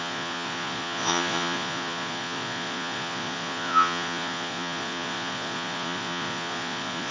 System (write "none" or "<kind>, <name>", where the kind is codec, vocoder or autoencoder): vocoder, Vocos